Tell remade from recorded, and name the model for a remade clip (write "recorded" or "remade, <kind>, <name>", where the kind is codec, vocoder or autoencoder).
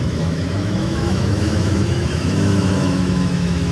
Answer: remade, autoencoder, DAC-VAE